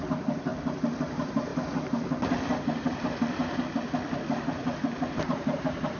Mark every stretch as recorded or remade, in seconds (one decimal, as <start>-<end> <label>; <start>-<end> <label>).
0.0-0.5 remade; 0.5-1.0 recorded; 1.0-1.5 remade; 1.5-5.1 recorded; 5.1-6.0 remade